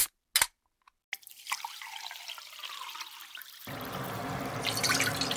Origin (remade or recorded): recorded